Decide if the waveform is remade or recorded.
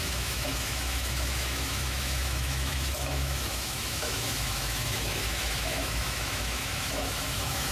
remade